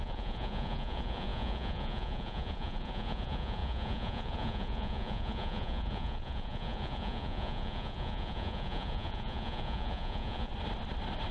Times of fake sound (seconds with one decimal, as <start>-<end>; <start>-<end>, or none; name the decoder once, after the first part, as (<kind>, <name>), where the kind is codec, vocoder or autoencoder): 0.0-10.5 (vocoder, Vocos)